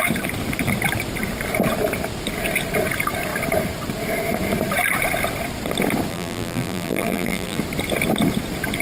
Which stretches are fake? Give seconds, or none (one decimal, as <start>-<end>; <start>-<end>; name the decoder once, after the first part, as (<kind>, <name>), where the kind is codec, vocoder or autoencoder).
6.1-7.6 (vocoder, BigVGAN v2)